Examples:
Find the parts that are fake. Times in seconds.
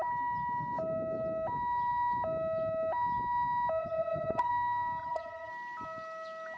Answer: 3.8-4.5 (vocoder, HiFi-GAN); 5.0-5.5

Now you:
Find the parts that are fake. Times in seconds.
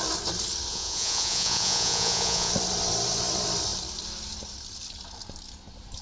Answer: 0.7-2.5 (vocoder, Vocos)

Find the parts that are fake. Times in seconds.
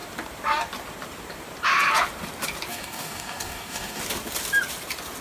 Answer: 2.7-4.0 (codec, DAC)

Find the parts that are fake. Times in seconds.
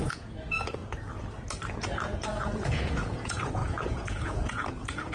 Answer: 0.0-0.8 (vocoder, Vocos); 1.8-5.1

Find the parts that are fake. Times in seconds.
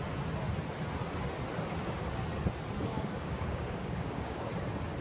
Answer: 2.8-4.5 (codec, DAC)